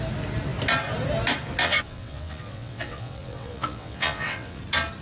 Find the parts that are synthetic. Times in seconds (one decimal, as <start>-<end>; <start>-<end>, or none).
1.6-4.6